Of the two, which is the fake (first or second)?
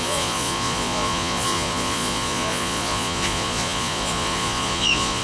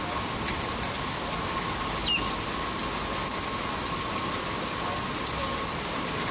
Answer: first